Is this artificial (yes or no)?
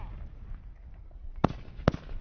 no